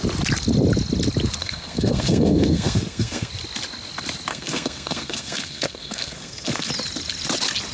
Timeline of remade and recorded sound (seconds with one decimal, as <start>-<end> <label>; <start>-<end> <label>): 0.0-1.4 recorded; 1.4-3.3 remade; 3.3-4.3 recorded; 4.3-6.7 remade; 6.7-7.7 recorded